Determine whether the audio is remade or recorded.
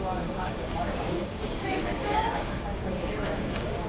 remade